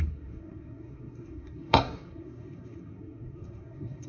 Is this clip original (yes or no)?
no